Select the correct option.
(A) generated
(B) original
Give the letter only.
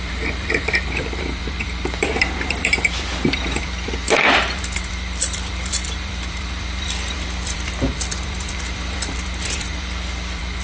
A